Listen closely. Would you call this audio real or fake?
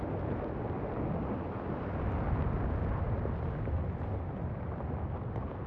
real